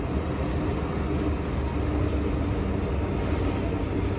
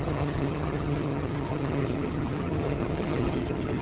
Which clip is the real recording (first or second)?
first